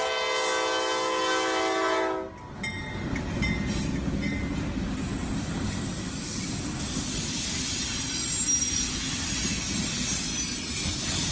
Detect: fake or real real